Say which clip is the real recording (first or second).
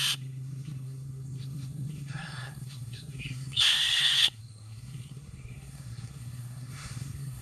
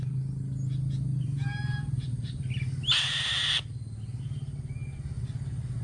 second